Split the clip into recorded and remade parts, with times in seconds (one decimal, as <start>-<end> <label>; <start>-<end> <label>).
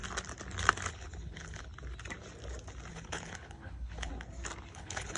0.0-0.9 recorded; 0.9-1.7 remade; 1.7-2.9 recorded; 2.9-4.1 remade; 4.1-4.7 recorded; 4.7-5.2 remade